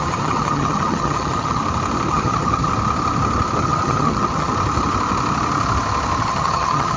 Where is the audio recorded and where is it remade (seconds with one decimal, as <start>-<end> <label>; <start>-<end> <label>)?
0.0-1.6 remade; 1.6-2.1 recorded; 2.1-2.7 remade; 2.7-3.6 recorded; 3.6-4.5 remade; 4.5-6.2 recorded; 6.2-7.0 remade